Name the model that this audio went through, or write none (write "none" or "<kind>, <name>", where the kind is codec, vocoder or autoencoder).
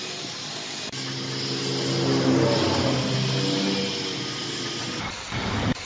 none